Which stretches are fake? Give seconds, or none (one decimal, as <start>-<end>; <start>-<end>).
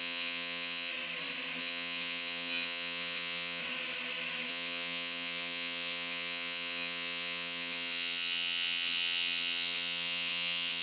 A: 0.0-0.9; 1.6-3.6; 4.5-10.8